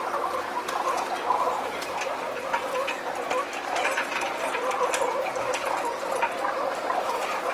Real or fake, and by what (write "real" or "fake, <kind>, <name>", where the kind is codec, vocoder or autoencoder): real